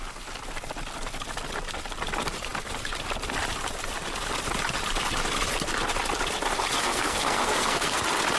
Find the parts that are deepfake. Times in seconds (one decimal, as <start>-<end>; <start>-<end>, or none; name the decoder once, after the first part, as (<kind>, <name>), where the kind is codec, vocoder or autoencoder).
6.8-8.0 (codec, SNAC)